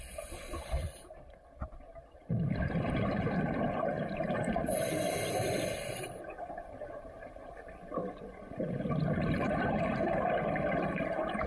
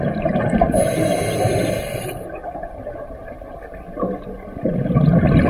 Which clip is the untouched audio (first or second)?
second